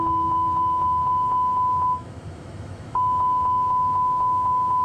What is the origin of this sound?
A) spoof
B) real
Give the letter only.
A